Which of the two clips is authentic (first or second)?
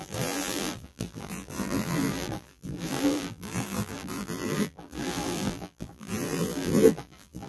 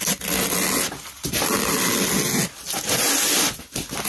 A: second